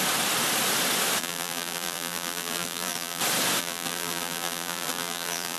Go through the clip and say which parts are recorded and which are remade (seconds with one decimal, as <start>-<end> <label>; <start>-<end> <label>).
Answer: 0.0-1.2 recorded; 1.2-3.2 remade; 3.2-3.6 recorded; 3.6-5.6 remade